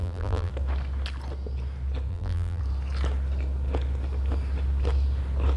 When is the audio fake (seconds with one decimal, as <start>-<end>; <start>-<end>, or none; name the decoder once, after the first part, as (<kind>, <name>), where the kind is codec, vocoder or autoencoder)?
0.0-0.5 (vocoder, BigVGAN v2); 2.1-2.6